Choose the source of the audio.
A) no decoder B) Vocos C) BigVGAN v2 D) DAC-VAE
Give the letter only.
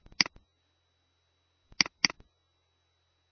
A